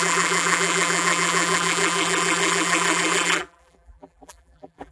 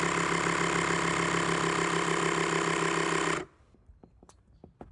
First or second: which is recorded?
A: second